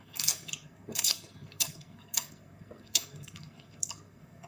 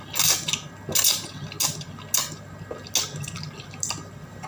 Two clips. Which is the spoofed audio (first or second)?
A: first